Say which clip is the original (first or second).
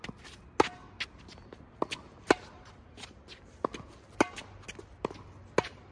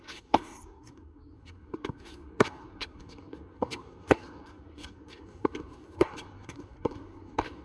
first